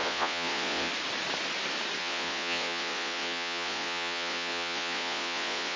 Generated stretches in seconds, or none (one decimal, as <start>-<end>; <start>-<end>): 0.0-0.9; 2.0-5.8